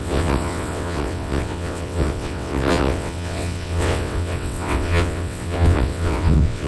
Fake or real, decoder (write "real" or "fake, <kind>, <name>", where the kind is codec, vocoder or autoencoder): fake, vocoder, WaveNeXt